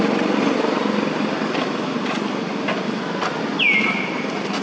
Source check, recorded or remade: recorded